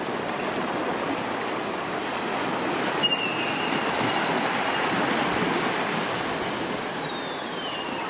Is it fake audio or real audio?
real